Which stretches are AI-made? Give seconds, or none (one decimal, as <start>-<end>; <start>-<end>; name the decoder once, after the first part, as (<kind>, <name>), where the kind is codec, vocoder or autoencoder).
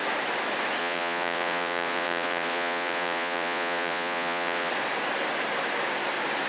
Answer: 0.8-4.7 (vocoder, Vocos)